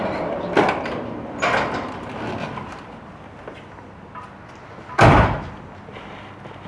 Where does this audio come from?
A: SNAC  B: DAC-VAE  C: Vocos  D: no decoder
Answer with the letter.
D